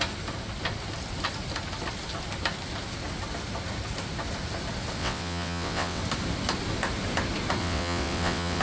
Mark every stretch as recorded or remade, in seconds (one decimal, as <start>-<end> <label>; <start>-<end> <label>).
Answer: 0.0-5.0 recorded; 5.0-6.0 remade; 6.0-7.6 recorded; 7.6-8.6 remade